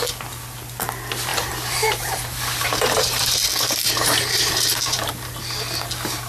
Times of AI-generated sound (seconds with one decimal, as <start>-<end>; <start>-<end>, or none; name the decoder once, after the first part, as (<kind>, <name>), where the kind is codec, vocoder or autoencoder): 1.3-5.1 (vocoder, BigVGAN v2)